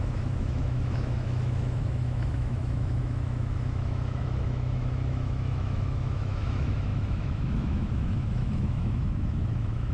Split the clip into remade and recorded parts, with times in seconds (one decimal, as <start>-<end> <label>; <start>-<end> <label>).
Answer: 0.0-9.9 remade